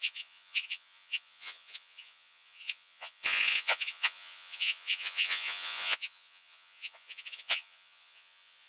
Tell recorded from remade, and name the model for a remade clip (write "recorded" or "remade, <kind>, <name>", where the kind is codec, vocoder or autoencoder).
remade, vocoder, Vocos